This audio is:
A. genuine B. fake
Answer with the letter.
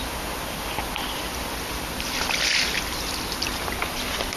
A